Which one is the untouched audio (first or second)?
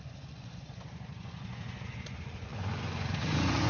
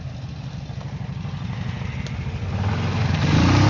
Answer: second